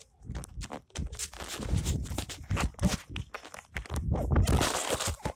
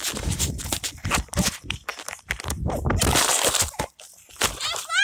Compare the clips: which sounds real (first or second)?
first